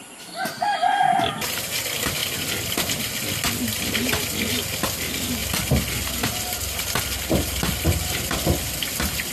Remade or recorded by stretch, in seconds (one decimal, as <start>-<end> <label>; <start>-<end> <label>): 0.0-9.3 recorded